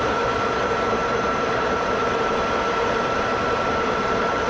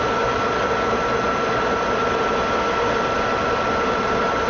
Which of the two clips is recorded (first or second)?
second